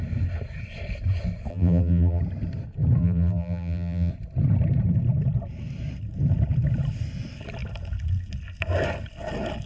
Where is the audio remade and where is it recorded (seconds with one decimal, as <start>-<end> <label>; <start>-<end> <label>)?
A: 0.0-1.5 recorded; 1.5-2.2 remade; 2.2-3.0 recorded; 3.0-4.1 remade; 4.1-9.7 recorded